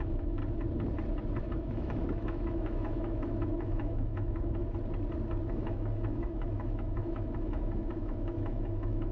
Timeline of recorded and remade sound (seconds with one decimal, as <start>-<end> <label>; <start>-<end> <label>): 0.0-0.4 remade; 0.4-1.4 recorded; 1.4-4.6 remade; 4.6-5.5 recorded; 5.5-9.1 remade